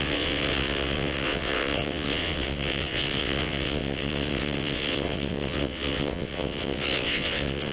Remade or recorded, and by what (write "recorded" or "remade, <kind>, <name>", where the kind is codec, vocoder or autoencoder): remade, vocoder, WaveNeXt